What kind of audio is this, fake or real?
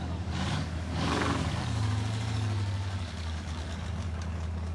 fake